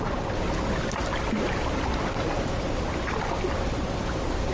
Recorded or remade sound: recorded